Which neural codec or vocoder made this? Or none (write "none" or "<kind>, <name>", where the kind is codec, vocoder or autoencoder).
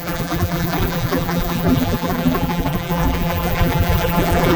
vocoder, BigVGAN v2